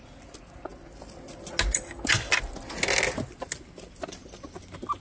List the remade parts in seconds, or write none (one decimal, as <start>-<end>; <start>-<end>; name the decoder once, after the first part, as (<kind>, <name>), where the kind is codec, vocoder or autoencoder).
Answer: none